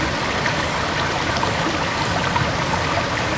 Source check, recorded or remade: remade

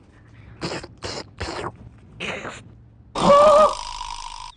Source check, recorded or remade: recorded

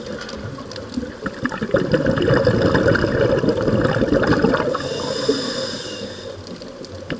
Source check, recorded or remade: recorded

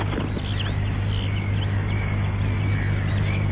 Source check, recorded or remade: recorded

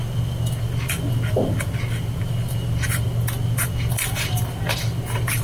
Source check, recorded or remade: recorded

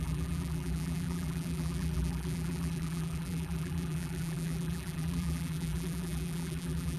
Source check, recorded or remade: remade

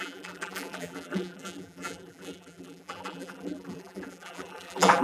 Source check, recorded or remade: remade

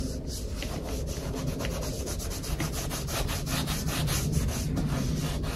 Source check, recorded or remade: recorded